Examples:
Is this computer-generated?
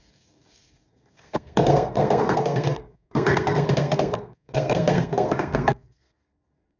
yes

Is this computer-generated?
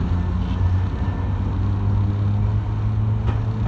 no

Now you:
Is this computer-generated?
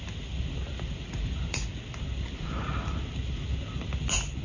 no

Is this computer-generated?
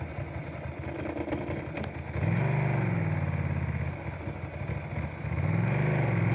no